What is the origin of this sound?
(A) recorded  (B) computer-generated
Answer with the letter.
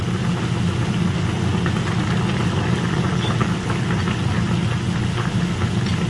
A